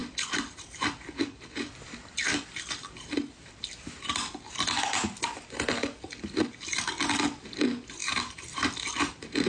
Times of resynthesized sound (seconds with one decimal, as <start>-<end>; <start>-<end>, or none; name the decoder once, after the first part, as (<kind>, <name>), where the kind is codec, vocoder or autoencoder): 0.0-3.7 (vocoder, BigVGAN v2); 8.0-9.5